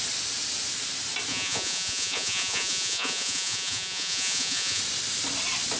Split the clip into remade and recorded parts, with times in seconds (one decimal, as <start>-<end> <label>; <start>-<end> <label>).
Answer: 0.0-1.3 recorded; 1.3-4.8 remade; 4.8-5.8 recorded

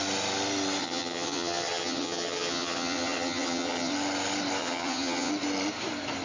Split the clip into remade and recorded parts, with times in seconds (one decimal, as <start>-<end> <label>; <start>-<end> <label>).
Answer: 0.0-0.8 recorded; 0.8-3.9 remade; 3.9-4.6 recorded; 4.6-5.3 remade; 5.3-6.2 recorded

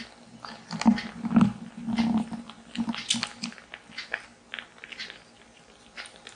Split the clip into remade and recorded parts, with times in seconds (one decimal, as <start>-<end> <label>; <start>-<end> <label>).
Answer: 0.0-6.4 recorded

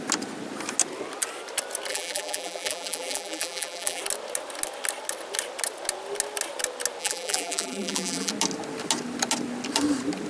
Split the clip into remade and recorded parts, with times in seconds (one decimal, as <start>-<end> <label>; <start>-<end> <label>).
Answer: 0.0-1.9 recorded; 1.9-4.0 remade; 4.0-7.0 recorded; 7.0-8.3 remade; 8.3-10.3 recorded